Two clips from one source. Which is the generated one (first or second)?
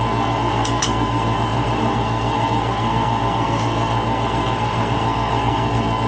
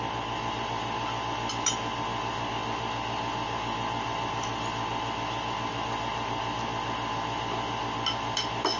first